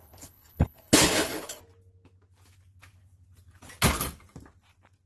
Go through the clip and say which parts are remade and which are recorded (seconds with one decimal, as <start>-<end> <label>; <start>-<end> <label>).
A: 0.0-1.6 remade; 1.6-5.1 recorded